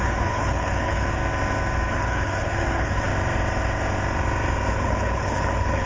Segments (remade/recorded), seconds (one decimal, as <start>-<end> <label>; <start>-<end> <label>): 0.0-1.2 remade; 1.2-1.9 recorded; 1.9-3.1 remade; 3.1-4.7 recorded; 4.7-5.9 remade